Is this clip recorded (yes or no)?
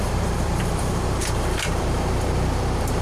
no